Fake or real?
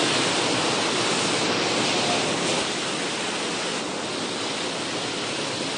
real